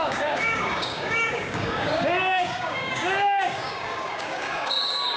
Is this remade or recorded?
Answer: remade